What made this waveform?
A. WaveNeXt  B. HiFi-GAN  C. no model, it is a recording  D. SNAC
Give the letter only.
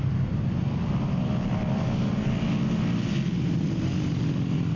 C